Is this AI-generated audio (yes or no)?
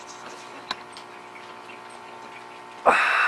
no